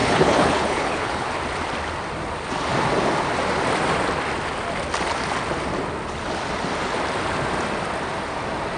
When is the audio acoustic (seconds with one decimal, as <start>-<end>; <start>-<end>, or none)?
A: 1.3-8.8